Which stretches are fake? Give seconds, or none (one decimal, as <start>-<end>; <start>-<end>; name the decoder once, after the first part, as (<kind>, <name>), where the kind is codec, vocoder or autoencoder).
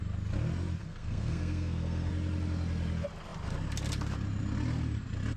0.8-2.1 (codec, SNAC)